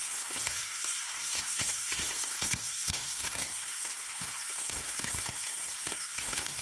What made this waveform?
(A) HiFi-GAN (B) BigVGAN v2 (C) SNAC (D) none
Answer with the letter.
C